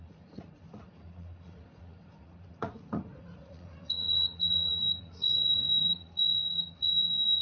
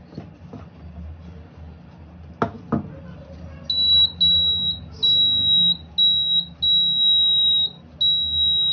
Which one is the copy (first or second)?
first